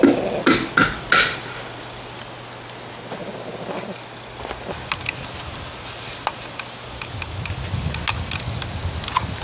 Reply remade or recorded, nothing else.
recorded